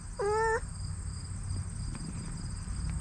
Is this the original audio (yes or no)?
yes